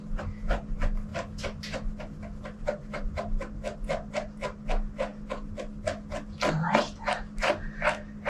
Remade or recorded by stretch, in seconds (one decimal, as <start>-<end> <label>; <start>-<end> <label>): 0.0-8.3 recorded